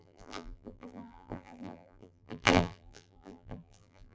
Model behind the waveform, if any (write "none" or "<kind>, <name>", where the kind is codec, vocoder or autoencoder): vocoder, BigVGAN v2